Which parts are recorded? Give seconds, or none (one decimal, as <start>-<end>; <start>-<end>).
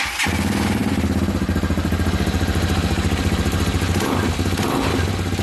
0.0-5.4